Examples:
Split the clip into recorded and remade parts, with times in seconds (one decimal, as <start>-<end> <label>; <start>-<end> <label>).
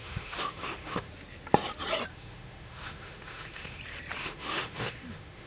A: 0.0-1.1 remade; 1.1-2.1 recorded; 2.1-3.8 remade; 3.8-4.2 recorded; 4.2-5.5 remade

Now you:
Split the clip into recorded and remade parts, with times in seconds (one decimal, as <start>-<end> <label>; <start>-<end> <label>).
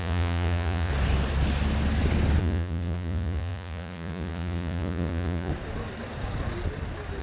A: 0.0-0.9 remade; 0.9-2.4 recorded; 2.4-5.5 remade; 5.5-7.2 recorded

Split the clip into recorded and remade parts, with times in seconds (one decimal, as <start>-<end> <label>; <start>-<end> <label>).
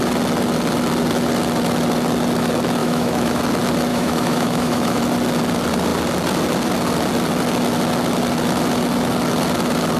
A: 0.0-2.8 recorded; 2.8-3.4 remade; 3.4-3.9 recorded; 3.9-5.0 remade; 5.0-10.0 recorded